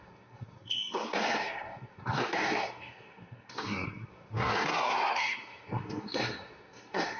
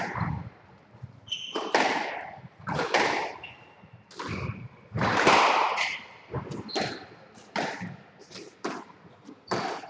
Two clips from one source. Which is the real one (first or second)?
second